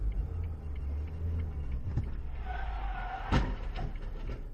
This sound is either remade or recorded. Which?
recorded